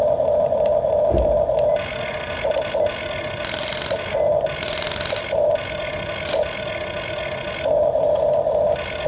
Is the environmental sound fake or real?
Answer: real